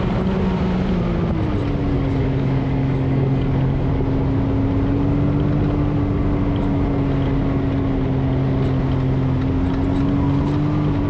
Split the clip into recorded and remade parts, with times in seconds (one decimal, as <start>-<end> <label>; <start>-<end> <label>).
0.0-1.9 recorded; 1.9-3.9 remade; 3.9-11.1 recorded